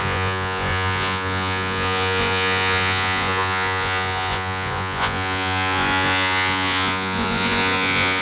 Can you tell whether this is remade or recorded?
remade